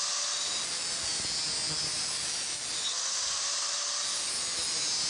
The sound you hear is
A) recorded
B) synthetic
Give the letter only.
A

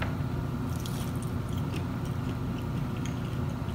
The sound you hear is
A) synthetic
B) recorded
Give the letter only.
B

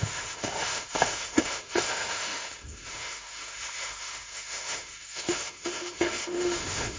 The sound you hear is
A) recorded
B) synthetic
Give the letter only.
B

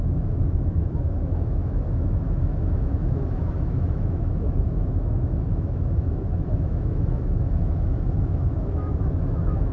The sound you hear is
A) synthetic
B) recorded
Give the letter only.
A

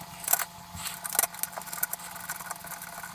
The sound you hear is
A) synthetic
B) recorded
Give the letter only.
B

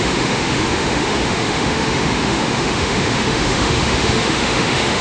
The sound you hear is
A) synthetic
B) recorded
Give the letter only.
A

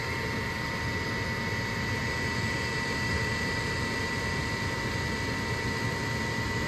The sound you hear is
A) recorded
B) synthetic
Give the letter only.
A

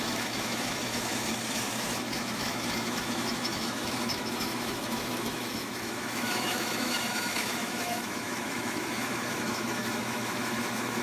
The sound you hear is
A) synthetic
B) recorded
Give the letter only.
A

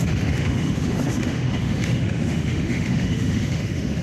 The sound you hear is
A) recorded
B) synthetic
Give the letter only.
B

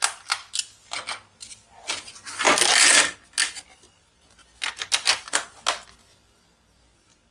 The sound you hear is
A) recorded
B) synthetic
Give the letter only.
A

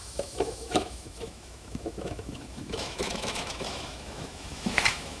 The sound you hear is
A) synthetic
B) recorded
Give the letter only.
A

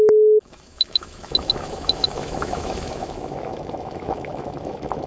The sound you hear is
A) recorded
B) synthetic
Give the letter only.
B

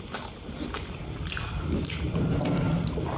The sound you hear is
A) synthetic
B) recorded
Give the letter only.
B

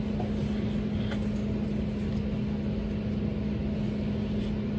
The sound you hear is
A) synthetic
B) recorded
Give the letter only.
B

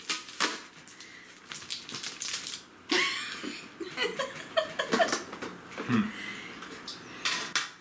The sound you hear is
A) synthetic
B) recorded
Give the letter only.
B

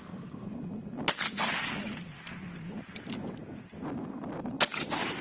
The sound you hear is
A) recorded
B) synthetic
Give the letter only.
A